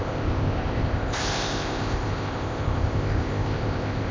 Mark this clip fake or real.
fake